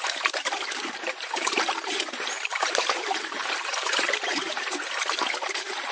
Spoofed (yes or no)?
yes